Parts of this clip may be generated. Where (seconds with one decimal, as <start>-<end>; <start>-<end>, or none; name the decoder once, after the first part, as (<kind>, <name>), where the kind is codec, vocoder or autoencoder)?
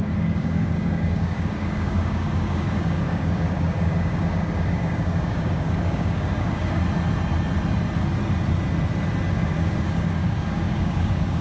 0.0-6.8 (codec, DAC); 9.3-11.4